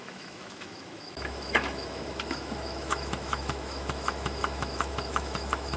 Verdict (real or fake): fake